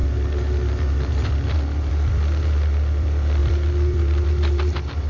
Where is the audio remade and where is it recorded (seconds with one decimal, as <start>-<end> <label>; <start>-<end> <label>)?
0.0-3.4 recorded; 3.4-4.0 remade; 4.0-5.1 recorded